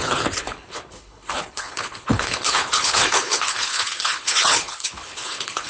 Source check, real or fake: fake